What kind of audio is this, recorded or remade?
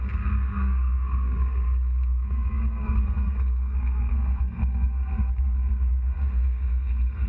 remade